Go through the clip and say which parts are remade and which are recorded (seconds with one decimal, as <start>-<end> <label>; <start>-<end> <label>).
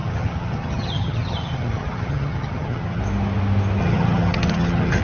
0.0-3.0 remade; 3.0-3.8 recorded; 3.8-5.0 remade